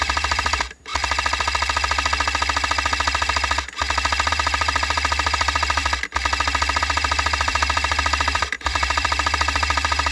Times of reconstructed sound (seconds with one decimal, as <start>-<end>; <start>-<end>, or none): 0.0-0.9; 4.3-5.8; 6.8-10.1

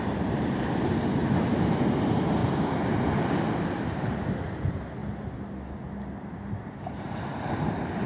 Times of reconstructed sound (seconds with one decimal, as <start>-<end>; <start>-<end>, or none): 0.0-1.2; 2.0-2.4; 3.9-5.0; 6.6-8.1

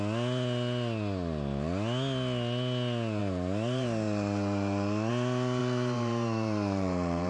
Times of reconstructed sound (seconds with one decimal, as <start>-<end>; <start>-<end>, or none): 3.2-5.1; 5.6-7.3

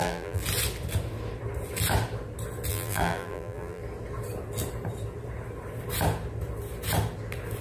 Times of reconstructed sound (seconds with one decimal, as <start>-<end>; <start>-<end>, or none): 0.0-0.4; 2.7-3.8

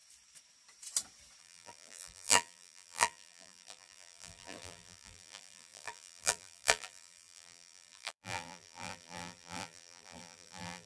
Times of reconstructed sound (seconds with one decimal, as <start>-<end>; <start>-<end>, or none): 1.4-10.9

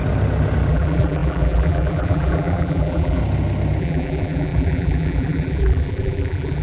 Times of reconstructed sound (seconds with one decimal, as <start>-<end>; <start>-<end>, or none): 0.7-3.2; 3.8-6.6